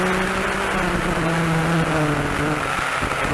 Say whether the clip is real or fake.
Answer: real